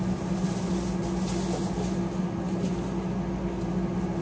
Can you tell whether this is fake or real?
real